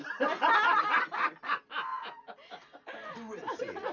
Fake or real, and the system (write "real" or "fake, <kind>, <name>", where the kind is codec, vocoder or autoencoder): real